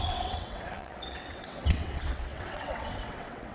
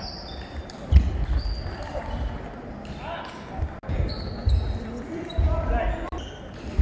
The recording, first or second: second